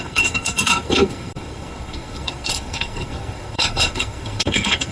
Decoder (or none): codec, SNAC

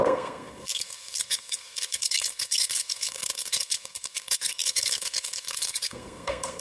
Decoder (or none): codec, SNAC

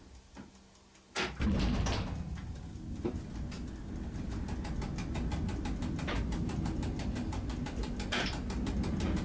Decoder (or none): none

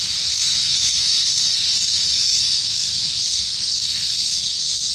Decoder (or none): codec, SNAC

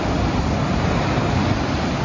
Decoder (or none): none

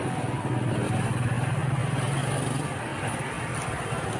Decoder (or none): none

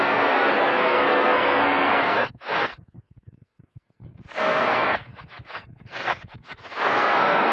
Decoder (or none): codec, SNAC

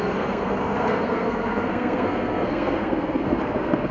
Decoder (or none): codec, SNAC